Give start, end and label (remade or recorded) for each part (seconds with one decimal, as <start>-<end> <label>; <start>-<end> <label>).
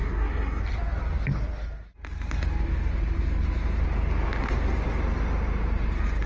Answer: 0.0-0.6 remade; 0.6-6.3 recorded